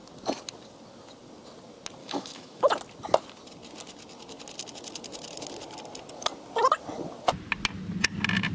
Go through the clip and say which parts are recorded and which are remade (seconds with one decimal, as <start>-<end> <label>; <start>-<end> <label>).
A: 0.0-2.0 recorded; 2.0-2.7 remade; 2.7-8.5 recorded